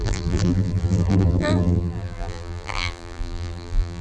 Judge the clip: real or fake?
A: fake